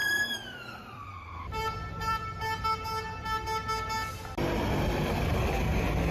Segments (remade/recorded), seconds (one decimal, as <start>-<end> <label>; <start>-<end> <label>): 0.0-2.4 remade; 2.4-6.1 recorded